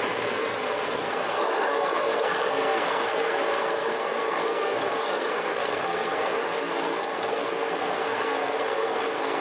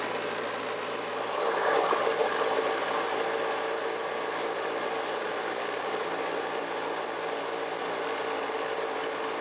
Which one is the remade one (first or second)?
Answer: first